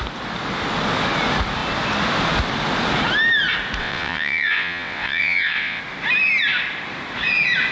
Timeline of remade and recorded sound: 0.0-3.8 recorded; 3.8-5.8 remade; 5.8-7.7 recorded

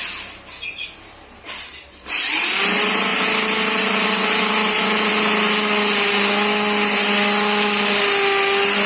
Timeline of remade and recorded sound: 0.0-8.9 recorded

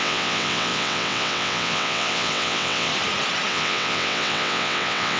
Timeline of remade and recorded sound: 0.0-2.9 remade; 2.9-3.5 recorded; 3.5-5.2 remade

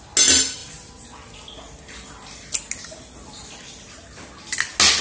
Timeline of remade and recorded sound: 0.0-5.0 recorded